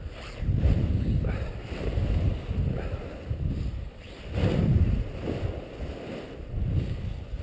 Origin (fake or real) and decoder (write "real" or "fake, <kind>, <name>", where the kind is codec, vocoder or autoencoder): real